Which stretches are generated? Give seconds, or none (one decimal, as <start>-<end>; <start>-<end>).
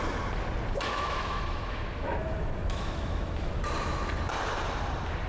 0.9-3.5